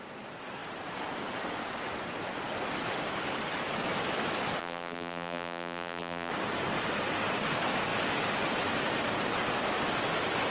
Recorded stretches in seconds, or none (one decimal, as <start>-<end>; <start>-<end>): 0.0-4.6; 6.3-10.5